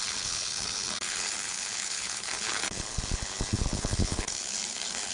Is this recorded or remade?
remade